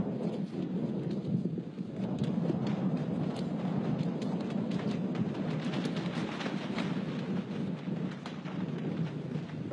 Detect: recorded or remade recorded